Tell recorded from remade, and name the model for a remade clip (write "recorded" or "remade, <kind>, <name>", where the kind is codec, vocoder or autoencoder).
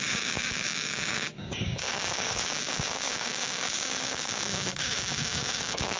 remade, codec, DAC